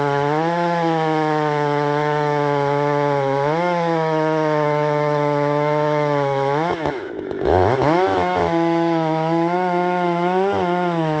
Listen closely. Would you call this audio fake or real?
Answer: fake